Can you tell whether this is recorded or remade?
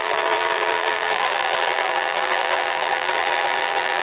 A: remade